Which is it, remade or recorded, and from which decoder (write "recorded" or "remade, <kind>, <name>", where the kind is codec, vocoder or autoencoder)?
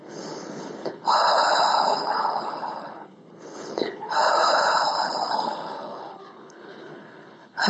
remade, codec, HILCodec